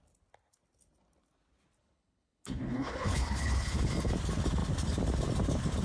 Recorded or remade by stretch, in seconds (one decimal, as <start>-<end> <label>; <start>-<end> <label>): 0.0-1.8 recorded; 1.8-3.9 remade; 3.9-5.8 recorded